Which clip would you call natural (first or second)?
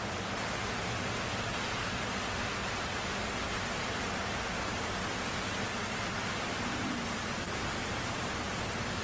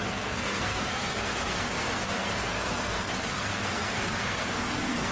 first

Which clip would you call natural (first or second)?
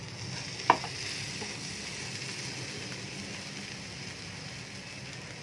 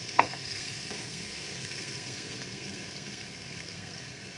first